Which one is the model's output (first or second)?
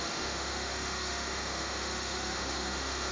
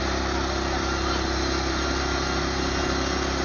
first